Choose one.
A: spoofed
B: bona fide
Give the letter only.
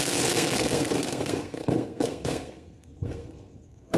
A